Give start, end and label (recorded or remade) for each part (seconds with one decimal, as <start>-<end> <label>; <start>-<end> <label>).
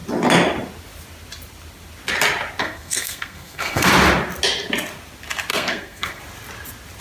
0.0-2.6 recorded; 2.6-3.9 remade; 3.9-5.5 recorded; 5.5-6.2 remade; 6.2-7.0 recorded